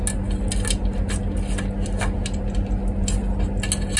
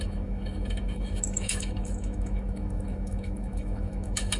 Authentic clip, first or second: first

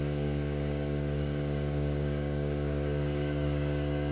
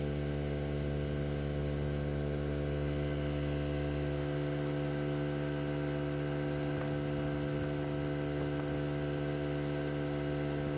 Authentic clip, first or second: second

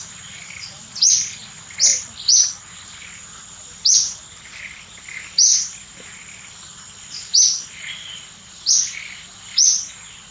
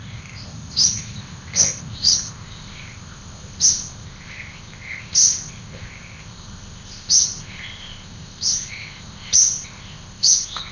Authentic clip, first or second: first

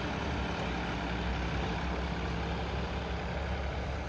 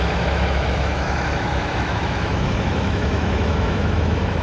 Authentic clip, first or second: first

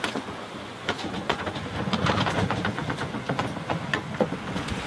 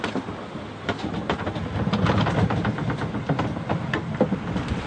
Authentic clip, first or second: second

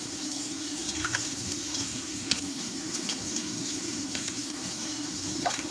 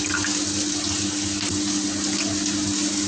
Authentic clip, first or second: second